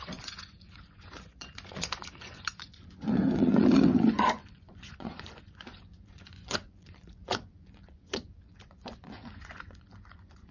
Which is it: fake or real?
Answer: fake